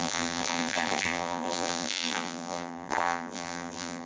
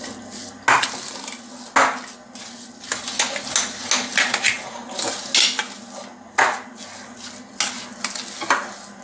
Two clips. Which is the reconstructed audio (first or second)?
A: first